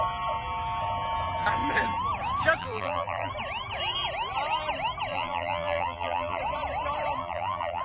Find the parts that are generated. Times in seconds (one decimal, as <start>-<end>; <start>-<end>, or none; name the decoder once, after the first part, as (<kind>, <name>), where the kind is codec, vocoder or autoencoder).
2.6-3.3 (vocoder, BigVGAN v2); 5.1-6.4; 7.2-7.8